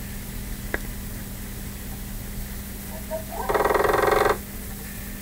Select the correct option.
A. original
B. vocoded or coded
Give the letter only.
A